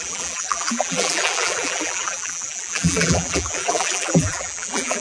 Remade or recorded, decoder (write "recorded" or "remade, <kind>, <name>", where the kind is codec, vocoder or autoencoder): remade, vocoder, BigVGAN v2